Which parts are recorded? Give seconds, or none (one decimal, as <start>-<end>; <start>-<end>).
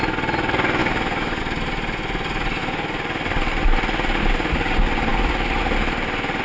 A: 0.0-0.8; 1.4-6.4